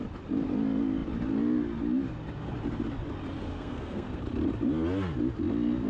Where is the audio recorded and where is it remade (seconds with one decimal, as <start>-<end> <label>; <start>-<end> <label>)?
0.0-3.5 recorded; 3.5-4.2 remade; 4.2-5.9 recorded